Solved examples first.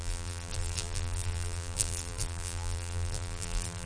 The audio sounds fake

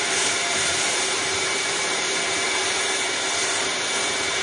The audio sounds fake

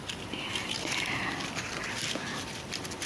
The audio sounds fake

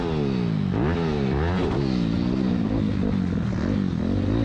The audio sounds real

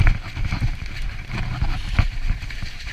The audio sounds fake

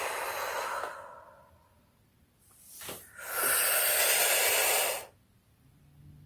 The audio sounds real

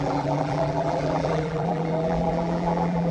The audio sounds fake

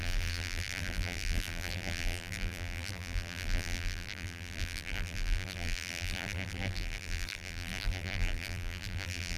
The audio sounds fake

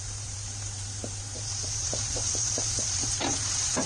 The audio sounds fake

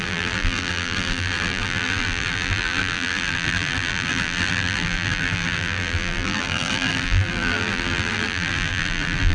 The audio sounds fake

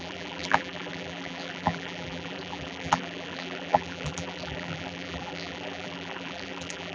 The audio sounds fake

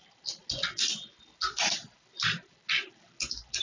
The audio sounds real